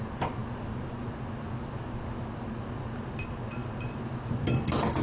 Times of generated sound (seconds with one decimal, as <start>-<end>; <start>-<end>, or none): none